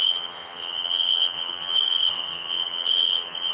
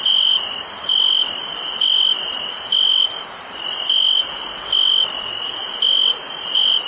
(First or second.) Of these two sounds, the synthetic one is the first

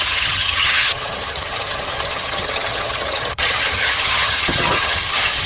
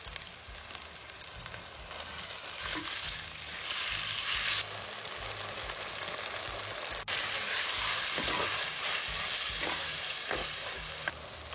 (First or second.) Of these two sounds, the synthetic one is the first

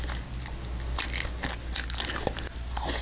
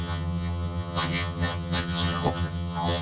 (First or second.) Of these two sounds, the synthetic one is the second